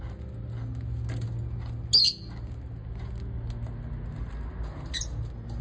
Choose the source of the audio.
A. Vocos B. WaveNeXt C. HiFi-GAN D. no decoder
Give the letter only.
D